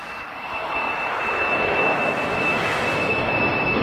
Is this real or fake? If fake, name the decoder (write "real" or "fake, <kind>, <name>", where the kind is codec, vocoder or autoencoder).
fake, autoencoder, DAC-VAE